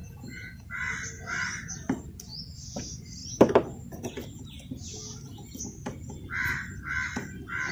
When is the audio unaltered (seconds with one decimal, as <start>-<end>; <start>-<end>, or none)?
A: 0.7-7.7